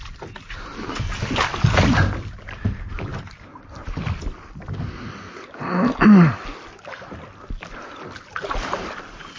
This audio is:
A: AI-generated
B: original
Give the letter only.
B